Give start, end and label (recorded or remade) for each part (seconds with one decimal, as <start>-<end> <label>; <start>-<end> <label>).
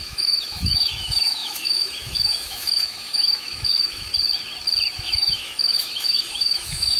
0.0-4.1 remade; 4.1-4.9 recorded; 4.9-7.0 remade